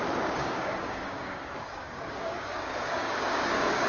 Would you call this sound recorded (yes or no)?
no